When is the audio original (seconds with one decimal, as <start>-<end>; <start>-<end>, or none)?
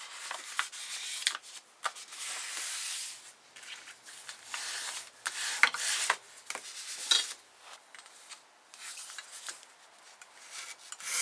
0.0-11.2